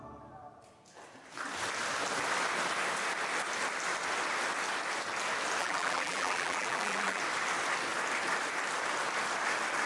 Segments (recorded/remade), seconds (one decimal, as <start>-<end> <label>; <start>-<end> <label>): 0.0-5.6 recorded; 5.6-7.2 remade; 7.2-9.9 recorded